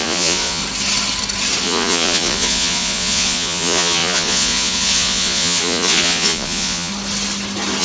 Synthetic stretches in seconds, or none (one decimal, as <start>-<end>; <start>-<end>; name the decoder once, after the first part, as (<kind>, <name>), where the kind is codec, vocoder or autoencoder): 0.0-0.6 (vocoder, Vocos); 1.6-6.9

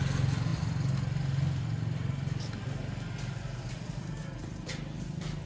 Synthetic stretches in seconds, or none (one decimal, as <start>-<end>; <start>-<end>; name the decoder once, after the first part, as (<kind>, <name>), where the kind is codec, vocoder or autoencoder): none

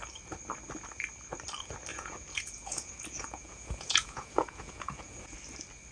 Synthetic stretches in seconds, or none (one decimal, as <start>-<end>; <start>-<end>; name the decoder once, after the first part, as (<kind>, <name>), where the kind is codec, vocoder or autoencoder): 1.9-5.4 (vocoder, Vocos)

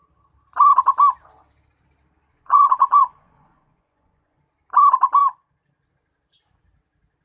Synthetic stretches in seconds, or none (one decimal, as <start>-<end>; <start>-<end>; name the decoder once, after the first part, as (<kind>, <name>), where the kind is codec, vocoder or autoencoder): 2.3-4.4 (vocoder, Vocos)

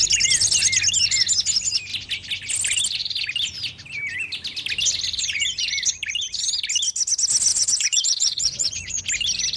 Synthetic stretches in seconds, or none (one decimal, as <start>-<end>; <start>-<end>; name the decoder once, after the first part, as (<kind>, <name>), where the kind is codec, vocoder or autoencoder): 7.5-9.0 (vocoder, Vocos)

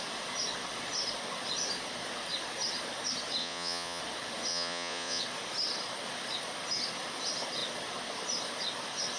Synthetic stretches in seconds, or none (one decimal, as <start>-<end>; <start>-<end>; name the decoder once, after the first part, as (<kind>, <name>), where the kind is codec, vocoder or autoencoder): 3.4-4.0 (vocoder, Vocos); 4.5-5.2

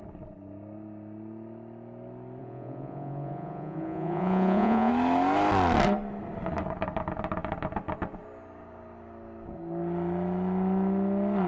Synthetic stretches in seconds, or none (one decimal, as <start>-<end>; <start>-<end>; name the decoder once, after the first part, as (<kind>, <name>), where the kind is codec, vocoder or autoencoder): 2.4-4.9 (vocoder, Vocos)

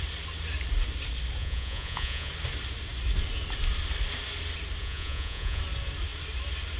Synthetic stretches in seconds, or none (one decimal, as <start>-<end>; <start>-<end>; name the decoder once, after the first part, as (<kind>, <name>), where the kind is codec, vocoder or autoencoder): 1.4-2.3 (vocoder, Vocos); 4.8-5.6